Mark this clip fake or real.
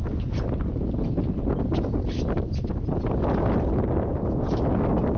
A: real